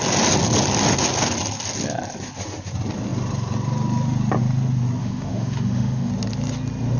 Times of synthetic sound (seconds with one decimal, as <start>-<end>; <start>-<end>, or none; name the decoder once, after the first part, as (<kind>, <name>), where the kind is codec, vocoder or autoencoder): 5.0-6.1 (autoencoder, DAC-VAE)